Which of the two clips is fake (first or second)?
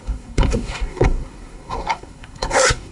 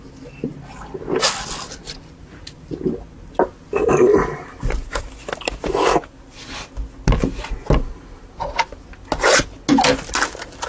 first